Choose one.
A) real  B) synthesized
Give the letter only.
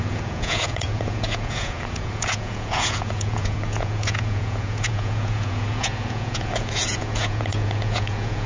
B